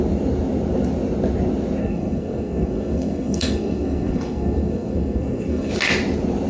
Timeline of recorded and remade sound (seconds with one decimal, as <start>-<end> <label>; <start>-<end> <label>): 0.0-1.8 recorded; 1.8-5.7 remade; 5.7-6.5 recorded